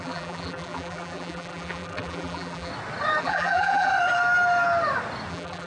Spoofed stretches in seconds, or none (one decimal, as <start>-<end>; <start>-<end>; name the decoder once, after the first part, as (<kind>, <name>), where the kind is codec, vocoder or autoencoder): 0.0-2.7 (vocoder, BigVGAN v2); 3.2-3.9; 5.3-5.7